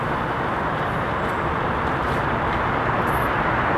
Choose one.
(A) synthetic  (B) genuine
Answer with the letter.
B